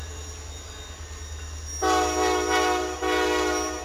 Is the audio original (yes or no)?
yes